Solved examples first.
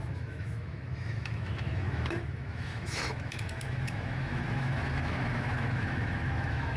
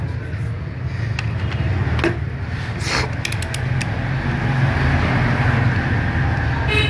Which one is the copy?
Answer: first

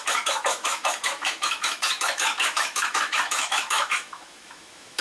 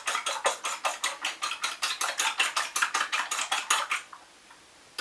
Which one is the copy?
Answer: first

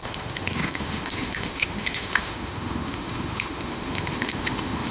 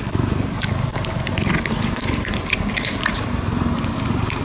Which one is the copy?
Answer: first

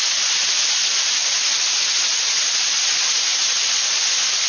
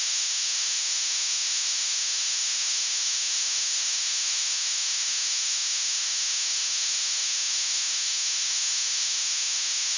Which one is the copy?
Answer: second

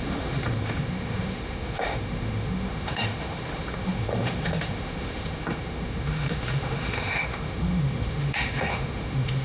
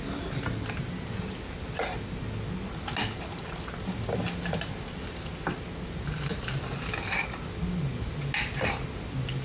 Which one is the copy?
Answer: first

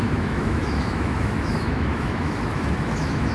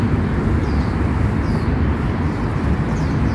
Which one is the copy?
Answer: first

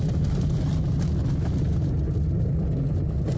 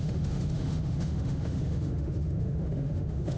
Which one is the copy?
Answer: second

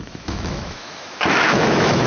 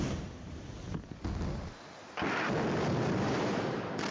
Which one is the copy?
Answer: first